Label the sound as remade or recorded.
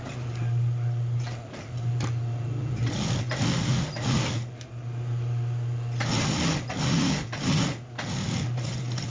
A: recorded